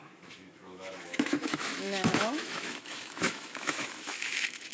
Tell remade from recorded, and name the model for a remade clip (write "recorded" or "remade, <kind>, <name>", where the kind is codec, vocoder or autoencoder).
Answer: remade, autoencoder, DAC-VAE